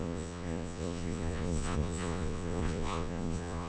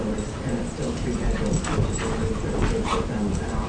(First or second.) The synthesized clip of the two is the first